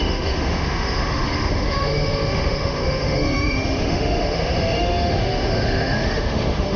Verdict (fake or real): fake